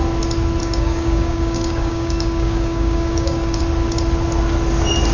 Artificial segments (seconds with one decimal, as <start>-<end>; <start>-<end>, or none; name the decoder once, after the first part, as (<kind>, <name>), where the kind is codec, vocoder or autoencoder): 0.6-3.6 (codec, DAC)